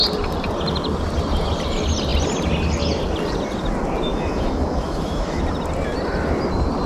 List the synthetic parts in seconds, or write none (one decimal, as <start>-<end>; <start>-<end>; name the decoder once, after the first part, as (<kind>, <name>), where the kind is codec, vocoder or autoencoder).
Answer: 4.1-5.4 (autoencoder, DAC-VAE)